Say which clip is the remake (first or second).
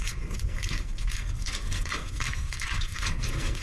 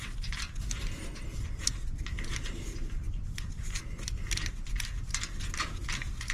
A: first